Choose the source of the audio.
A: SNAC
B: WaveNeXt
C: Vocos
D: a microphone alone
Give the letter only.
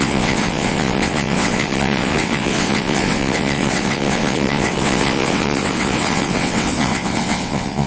B